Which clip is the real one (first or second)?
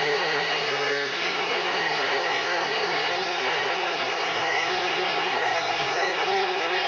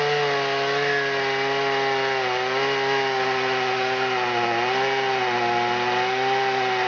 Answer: second